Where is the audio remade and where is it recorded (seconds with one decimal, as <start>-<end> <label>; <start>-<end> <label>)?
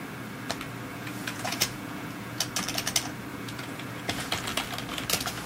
0.0-0.9 recorded; 0.9-2.4 remade; 2.4-3.3 recorded; 3.3-4.3 remade; 4.3-5.5 recorded